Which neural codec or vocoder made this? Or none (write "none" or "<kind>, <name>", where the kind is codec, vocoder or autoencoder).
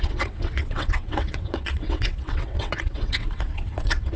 vocoder, WaveNeXt